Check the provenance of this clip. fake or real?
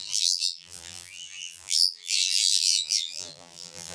fake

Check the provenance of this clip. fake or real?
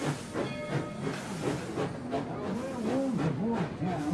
real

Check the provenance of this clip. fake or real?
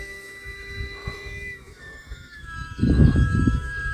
fake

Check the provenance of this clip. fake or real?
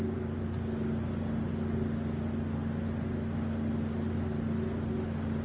real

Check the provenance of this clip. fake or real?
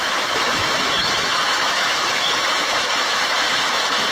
fake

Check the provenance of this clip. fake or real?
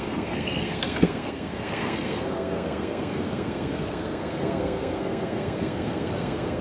fake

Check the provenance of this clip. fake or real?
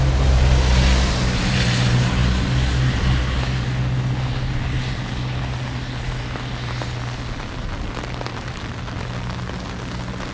real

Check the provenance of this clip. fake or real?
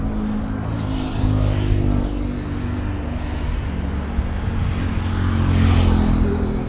real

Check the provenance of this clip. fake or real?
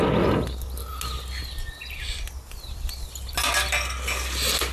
real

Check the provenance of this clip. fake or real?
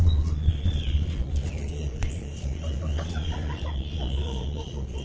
fake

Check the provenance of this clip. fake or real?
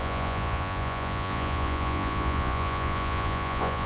fake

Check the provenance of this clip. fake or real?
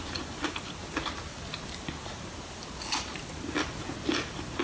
real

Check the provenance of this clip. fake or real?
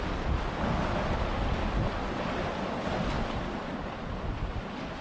real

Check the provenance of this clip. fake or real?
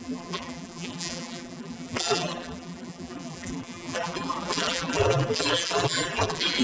fake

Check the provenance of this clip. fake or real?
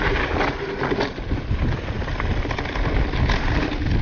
real